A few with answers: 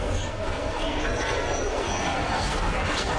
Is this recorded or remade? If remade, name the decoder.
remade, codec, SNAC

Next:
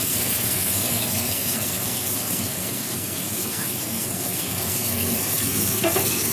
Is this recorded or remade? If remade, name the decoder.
remade, codec, SNAC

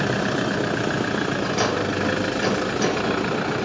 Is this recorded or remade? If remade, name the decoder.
recorded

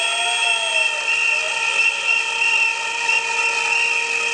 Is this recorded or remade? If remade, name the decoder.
recorded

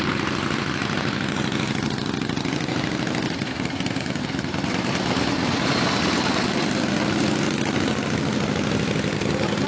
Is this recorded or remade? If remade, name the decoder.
recorded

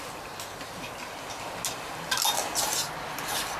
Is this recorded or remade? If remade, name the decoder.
recorded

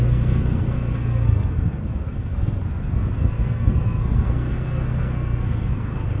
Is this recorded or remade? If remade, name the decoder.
remade, codec, SNAC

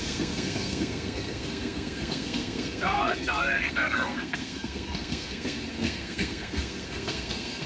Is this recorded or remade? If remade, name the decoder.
remade, codec, SNAC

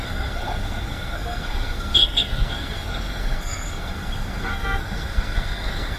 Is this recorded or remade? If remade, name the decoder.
remade, codec, SNAC